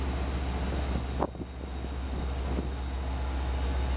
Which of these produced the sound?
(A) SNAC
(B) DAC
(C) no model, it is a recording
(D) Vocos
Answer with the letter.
C